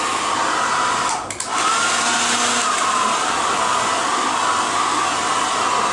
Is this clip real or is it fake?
real